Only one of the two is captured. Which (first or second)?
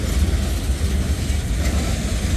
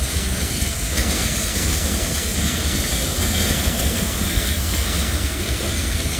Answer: first